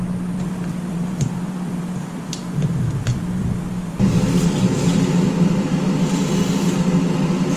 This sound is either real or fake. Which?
fake